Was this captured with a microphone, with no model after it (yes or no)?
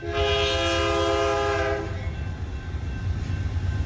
yes